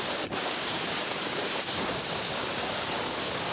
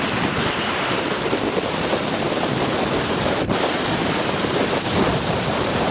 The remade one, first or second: first